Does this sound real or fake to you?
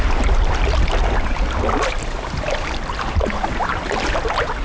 real